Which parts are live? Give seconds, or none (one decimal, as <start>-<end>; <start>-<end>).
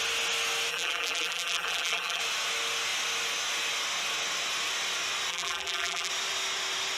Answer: 0.0-0.7; 2.2-5.3; 6.1-7.0